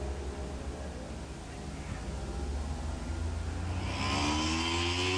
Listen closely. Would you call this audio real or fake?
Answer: real